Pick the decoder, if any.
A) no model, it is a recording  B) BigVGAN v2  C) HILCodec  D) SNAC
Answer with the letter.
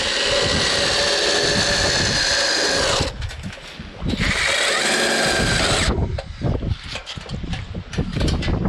A